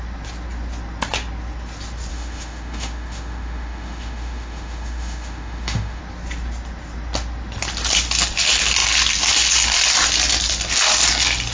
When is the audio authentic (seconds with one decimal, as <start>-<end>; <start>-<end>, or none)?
0.0-2.1; 6.0-11.5